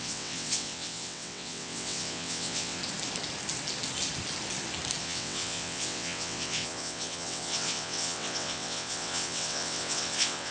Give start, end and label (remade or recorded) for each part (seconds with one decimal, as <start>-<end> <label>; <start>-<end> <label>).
0.0-2.8 remade; 2.8-5.0 recorded; 5.0-10.5 remade